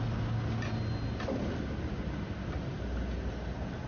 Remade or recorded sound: recorded